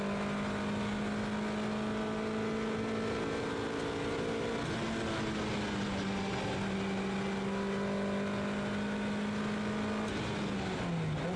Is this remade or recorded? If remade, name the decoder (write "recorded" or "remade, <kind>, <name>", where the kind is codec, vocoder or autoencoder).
recorded